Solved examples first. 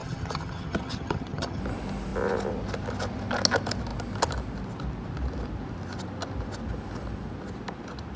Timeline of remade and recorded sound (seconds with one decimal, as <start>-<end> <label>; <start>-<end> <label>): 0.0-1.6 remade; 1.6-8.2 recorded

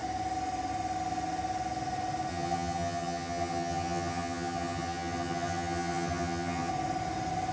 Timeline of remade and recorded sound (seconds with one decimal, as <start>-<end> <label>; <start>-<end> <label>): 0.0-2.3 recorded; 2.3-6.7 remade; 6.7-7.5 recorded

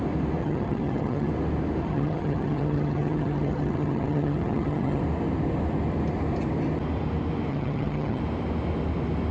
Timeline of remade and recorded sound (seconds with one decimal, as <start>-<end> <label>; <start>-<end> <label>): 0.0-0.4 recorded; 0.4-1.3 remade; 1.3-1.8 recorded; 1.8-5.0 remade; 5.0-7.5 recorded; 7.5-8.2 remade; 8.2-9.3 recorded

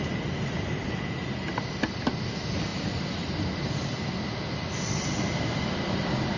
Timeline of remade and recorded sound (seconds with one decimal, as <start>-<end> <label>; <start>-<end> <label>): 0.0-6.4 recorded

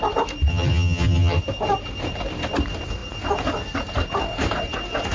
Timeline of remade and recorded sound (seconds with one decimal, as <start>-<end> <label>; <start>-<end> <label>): 0.0-0.5 recorded; 0.5-1.4 remade; 1.4-5.1 recorded